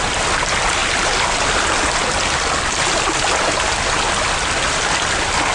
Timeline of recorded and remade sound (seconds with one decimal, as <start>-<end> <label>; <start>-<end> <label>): 0.0-5.5 recorded